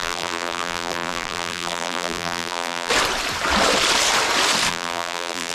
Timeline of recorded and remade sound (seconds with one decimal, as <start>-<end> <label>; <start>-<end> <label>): 0.0-2.9 remade; 2.9-4.7 recorded; 4.7-5.5 remade